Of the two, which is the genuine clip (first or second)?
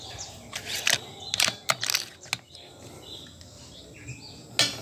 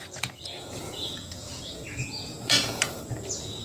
first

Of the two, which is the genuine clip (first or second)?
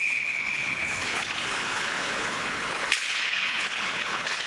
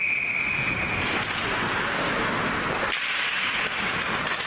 second